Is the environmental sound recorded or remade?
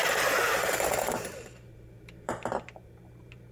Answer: remade